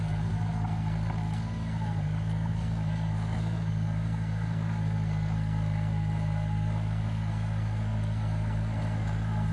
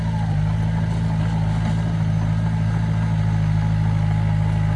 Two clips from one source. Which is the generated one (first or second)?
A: first